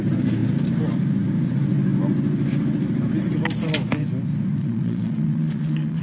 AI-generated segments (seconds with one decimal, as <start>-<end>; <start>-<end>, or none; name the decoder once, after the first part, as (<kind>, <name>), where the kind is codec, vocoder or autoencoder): 4.6-6.0 (vocoder, Vocos)